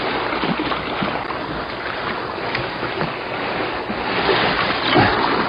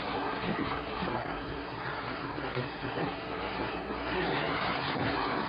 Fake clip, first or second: second